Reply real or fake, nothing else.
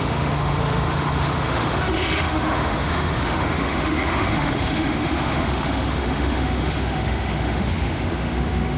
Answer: fake